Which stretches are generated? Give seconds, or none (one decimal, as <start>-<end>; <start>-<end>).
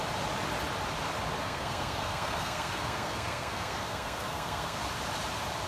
1.4-4.8